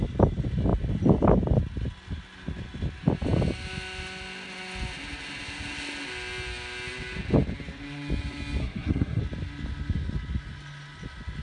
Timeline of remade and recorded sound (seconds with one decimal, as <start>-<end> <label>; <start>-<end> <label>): 0.0-8.6 recorded; 8.6-9.2 remade; 9.2-11.4 recorded